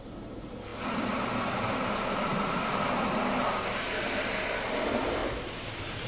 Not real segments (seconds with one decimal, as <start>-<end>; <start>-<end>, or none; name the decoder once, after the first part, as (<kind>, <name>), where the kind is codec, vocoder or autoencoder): none